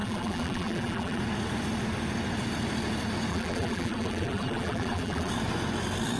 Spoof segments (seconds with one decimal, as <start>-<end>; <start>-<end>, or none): 0.0-1.2; 3.3-5.3